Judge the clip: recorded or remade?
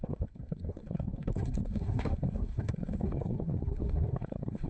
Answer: remade